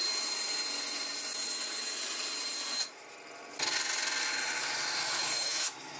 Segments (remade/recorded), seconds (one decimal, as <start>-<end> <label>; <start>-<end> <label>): 0.0-5.0 recorded; 5.0-6.0 remade